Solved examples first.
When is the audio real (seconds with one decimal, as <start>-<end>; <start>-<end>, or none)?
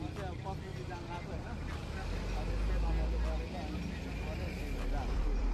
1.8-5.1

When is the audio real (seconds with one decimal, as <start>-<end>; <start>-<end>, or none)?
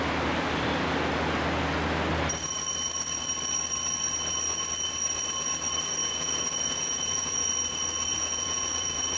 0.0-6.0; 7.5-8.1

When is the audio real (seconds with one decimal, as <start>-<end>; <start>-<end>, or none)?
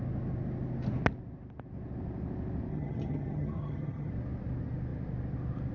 0.0-2.7; 4.1-5.7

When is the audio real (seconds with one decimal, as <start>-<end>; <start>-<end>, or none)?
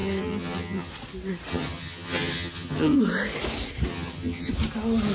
0.9-1.5; 3.0-3.9; 4.5-5.1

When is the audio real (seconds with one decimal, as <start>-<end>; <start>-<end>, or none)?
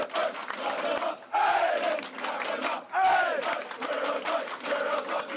0.0-5.4